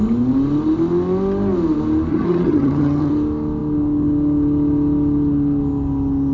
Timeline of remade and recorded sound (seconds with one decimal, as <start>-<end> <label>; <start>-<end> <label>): 0.0-2.1 recorded; 2.1-3.1 remade; 3.1-6.3 recorded

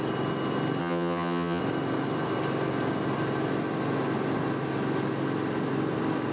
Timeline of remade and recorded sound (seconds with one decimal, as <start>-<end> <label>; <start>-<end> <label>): 0.0-0.8 recorded; 0.8-1.6 remade; 1.6-6.3 recorded